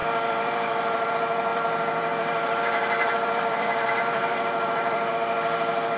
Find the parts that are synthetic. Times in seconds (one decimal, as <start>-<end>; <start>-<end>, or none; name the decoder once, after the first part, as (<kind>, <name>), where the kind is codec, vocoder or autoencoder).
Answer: 0.0-1.1 (vocoder, BigVGAN v2); 1.5-5.1